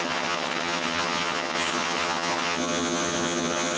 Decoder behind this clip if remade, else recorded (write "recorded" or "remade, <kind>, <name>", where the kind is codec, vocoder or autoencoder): remade, vocoder, HiFi-GAN